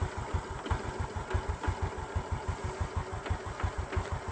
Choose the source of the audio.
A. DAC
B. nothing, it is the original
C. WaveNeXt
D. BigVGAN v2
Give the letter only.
B